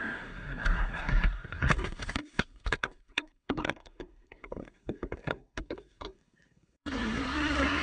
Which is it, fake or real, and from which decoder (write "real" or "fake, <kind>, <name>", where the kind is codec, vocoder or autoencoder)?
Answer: fake, codec, SNAC